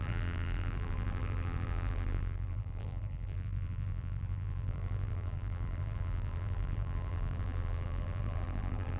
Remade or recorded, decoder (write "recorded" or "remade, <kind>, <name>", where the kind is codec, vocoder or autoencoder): remade, vocoder, BigVGAN v2